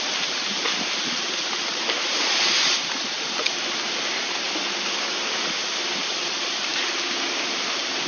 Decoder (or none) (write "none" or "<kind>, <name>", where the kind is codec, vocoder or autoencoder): none